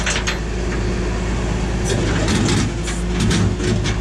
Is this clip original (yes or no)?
yes